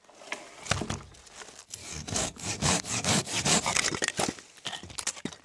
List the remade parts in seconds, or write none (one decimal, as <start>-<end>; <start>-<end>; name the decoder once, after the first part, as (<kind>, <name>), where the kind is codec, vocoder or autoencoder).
1.8-3.6 (codec, DAC)